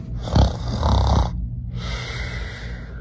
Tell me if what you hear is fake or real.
real